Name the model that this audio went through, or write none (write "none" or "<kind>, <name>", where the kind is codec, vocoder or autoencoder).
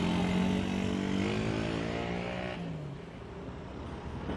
none